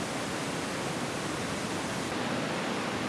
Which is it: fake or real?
real